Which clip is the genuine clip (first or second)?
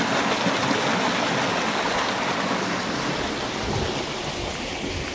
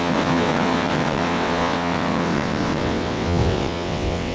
first